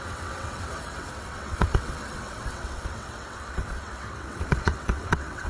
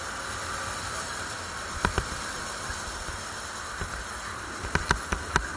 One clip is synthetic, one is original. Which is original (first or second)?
second